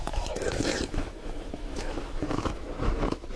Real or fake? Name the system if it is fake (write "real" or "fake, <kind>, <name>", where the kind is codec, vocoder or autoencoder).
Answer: fake, autoencoder, DAC-VAE